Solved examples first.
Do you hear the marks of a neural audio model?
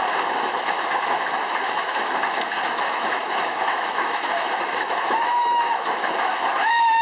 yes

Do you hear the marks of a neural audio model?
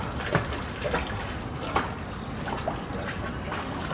no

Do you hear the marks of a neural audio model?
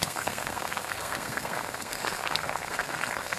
yes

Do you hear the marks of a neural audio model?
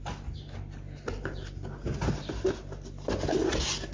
no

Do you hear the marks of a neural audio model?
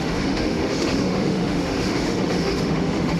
yes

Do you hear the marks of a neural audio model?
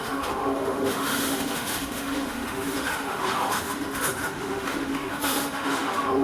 yes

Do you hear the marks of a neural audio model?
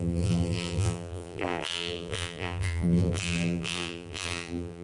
yes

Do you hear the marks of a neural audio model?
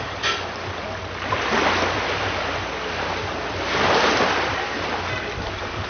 no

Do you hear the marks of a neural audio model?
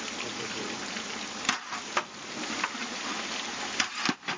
no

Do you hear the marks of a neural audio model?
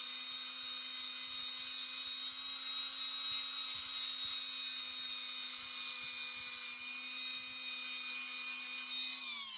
no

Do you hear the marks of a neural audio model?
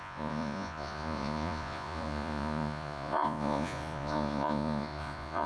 yes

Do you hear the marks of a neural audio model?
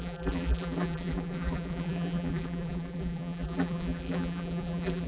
yes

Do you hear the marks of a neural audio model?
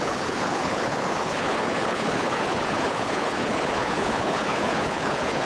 yes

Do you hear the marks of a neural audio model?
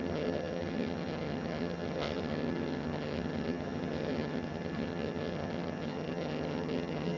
yes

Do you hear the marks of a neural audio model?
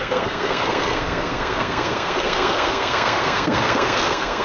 yes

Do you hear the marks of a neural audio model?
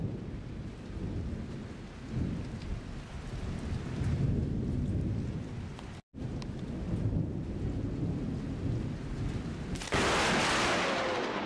no